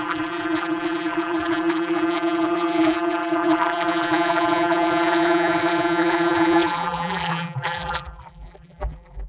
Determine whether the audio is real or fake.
fake